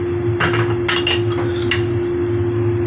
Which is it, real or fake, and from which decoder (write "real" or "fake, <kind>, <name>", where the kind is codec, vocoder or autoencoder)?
real